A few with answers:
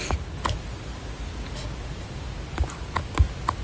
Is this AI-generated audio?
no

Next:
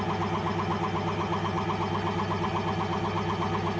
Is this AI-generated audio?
no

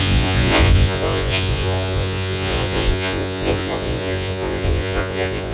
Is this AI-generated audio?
yes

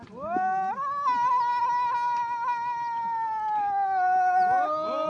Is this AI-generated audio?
no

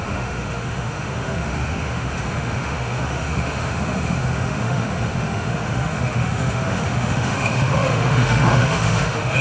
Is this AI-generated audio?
yes